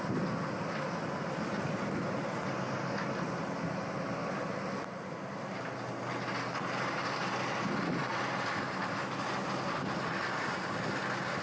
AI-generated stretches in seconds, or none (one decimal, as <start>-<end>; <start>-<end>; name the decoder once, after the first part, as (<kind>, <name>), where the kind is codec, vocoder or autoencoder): none